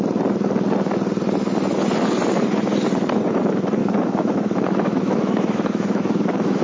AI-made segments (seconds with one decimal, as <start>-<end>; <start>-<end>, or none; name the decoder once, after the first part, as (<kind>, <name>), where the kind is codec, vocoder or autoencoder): 3.8-6.6 (autoencoder, DAC-VAE)